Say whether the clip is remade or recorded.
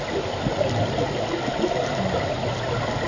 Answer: recorded